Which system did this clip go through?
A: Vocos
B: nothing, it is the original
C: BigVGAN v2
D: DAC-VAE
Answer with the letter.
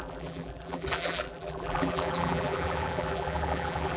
C